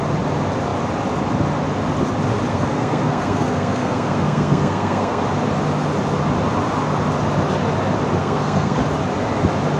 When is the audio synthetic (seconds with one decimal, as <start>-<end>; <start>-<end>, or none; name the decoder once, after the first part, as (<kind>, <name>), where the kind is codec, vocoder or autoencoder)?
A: 2.5-5.2 (codec, SNAC); 8.2-8.8